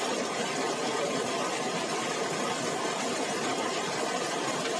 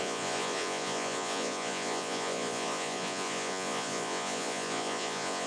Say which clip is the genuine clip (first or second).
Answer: first